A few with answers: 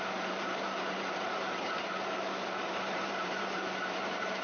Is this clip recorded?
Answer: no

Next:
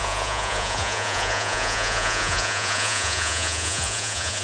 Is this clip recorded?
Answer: no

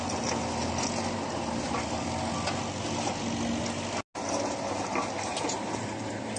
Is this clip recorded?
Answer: yes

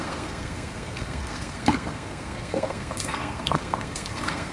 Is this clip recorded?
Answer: no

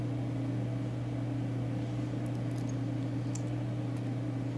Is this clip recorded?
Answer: yes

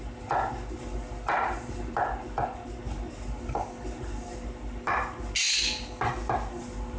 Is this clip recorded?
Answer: yes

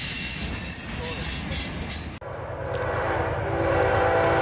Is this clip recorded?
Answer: yes